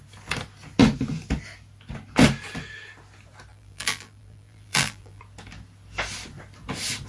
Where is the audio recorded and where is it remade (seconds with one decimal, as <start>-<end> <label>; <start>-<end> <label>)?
0.0-3.5 recorded; 3.5-5.2 remade; 5.2-7.1 recorded